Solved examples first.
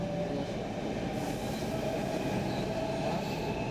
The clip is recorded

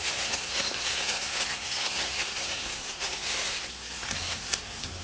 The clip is remade